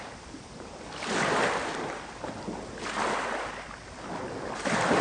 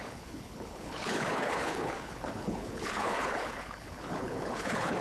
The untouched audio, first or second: first